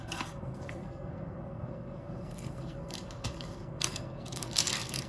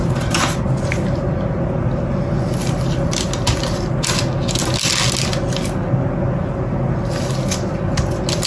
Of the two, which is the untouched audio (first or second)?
second